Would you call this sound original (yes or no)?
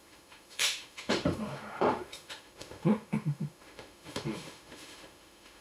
no